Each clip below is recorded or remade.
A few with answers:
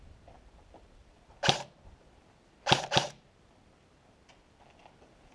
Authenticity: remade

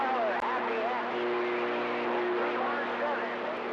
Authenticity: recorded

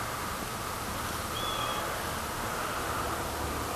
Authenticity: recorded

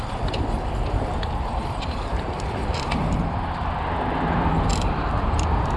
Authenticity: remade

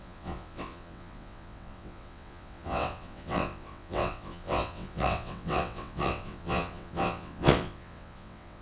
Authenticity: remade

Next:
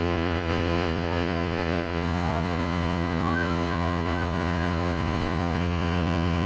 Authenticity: remade